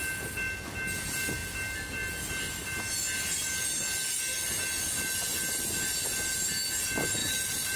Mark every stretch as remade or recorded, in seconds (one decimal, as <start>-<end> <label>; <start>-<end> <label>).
0.0-7.2 recorded; 7.2-7.8 remade